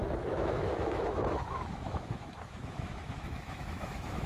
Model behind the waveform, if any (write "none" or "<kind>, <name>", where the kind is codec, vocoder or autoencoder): autoencoder, DAC-VAE